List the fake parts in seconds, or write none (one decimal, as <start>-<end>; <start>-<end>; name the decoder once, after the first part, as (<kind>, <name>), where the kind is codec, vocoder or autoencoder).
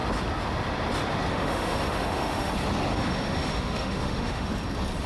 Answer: 1.3-2.5 (autoencoder, DAC-VAE); 2.9-4.5